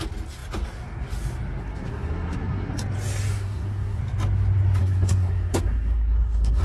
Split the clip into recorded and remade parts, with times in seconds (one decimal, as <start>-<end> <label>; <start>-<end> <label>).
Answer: 0.0-1.6 recorded; 1.6-2.8 remade; 2.8-3.3 recorded; 3.3-4.0 remade; 4.0-4.8 recorded; 4.8-6.6 remade